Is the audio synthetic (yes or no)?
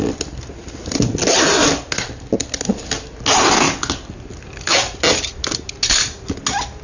no